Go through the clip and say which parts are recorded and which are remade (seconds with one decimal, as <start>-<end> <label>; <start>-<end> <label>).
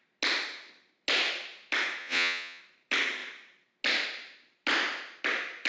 0.0-2.0 recorded; 2.0-2.6 remade; 2.6-5.7 recorded